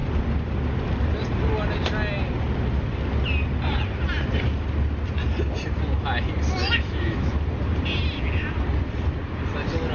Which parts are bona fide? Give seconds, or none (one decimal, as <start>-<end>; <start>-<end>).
0.0-6.6; 7.3-9.9